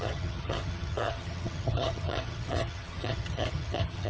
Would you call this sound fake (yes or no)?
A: yes